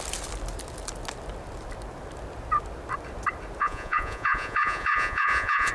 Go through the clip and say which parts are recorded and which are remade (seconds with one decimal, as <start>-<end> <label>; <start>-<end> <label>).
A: 0.0-3.6 recorded; 3.6-5.7 remade

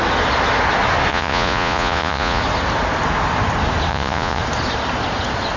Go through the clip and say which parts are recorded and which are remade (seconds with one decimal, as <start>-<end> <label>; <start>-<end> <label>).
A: 0.0-1.1 recorded; 1.1-2.4 remade; 2.4-3.9 recorded; 3.9-4.4 remade; 4.4-5.6 recorded

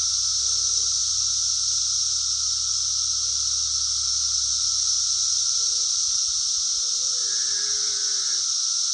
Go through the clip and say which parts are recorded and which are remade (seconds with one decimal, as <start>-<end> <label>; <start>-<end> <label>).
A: 0.0-1.2 remade; 1.2-7.2 recorded; 7.2-8.9 remade

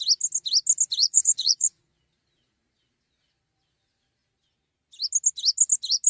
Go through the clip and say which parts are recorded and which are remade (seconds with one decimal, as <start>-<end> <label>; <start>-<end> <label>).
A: 0.0-1.0 recorded; 1.0-1.8 remade; 1.8-6.1 recorded

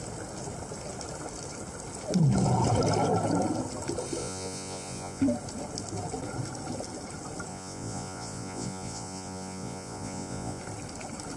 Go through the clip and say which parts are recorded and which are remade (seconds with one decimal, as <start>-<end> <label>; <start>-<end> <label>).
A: 0.0-4.2 recorded; 4.2-5.2 remade; 5.2-7.5 recorded; 7.5-10.6 remade; 10.6-11.4 recorded

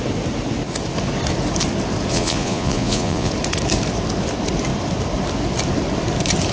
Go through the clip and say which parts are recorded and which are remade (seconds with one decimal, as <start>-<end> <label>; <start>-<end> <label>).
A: 0.0-2.1 recorded; 2.1-3.3 remade; 3.3-6.5 recorded